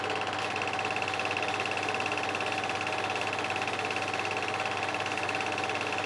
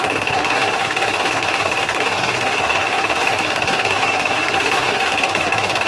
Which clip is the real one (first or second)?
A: first